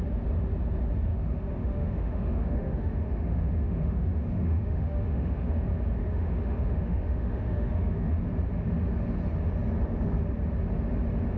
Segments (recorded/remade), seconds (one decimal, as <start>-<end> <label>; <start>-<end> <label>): 0.0-1.1 recorded; 1.1-5.5 remade; 5.5-6.0 recorded; 6.0-8.1 remade; 8.1-11.4 recorded